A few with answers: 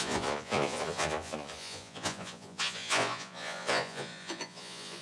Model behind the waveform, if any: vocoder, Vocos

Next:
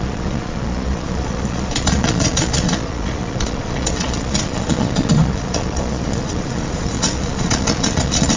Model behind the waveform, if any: vocoder, Vocos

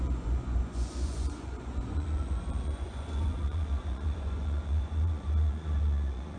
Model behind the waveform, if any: vocoder, Vocos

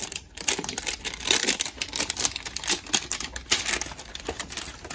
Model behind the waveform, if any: none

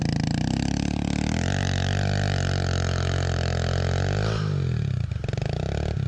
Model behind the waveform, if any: none